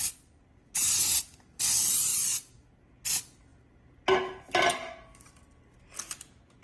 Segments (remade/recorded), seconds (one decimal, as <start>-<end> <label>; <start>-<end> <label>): 0.0-6.6 recorded